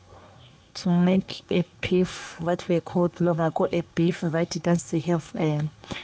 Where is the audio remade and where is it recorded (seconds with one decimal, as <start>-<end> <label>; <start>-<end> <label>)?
0.0-6.0 remade